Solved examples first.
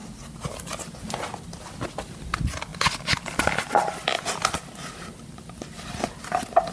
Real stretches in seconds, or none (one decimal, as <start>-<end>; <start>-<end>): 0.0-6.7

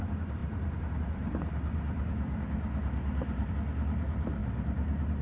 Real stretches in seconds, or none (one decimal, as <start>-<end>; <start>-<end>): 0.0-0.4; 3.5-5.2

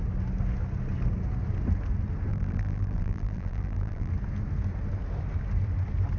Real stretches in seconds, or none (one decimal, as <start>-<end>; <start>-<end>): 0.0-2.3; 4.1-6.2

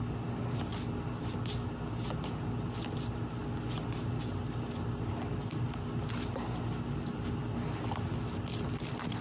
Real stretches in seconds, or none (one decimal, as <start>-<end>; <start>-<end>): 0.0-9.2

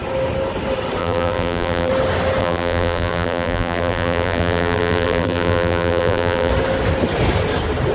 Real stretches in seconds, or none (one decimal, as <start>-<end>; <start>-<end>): 0.0-1.0; 1.9-2.4; 6.5-7.9